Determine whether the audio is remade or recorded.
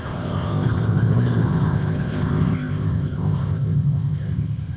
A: remade